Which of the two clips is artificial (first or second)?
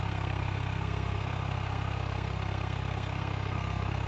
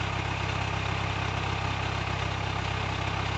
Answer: first